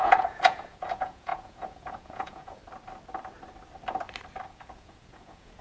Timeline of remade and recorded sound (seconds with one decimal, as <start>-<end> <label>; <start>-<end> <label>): 0.0-2.6 remade; 2.6-4.5 recorded; 4.5-5.6 remade